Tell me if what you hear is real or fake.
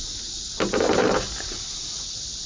real